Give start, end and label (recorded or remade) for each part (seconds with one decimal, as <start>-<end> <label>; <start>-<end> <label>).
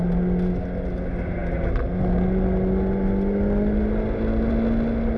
0.0-5.2 recorded